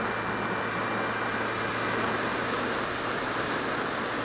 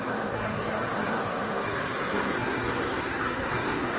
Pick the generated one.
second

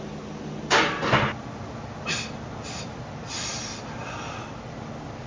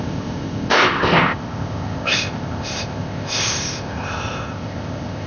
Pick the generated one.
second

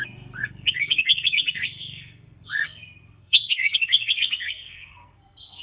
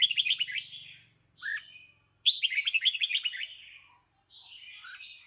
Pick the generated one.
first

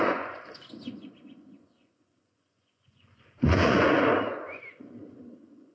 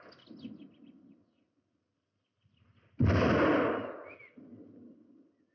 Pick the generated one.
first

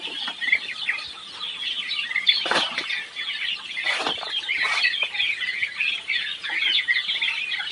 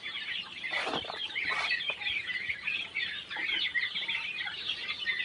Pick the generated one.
second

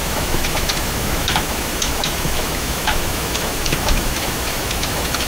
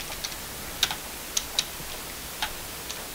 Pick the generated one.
first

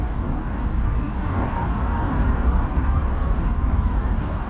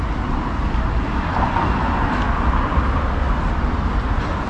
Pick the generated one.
first